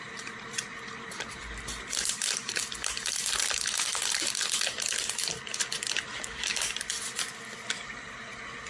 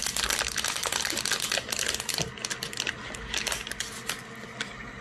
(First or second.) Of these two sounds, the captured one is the second